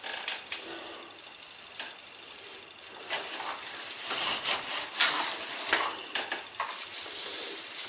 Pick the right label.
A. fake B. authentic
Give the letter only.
B